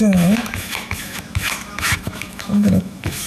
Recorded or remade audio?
remade